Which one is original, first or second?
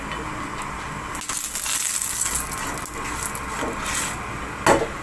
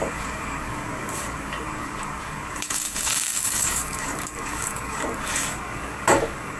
first